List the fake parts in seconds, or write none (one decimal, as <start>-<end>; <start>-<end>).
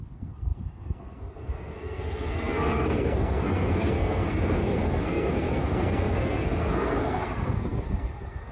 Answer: 0.0-8.5